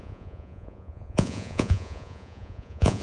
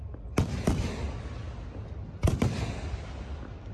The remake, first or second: first